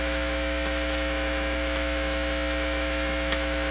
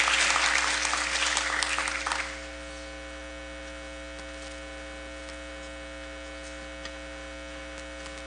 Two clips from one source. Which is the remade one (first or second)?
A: first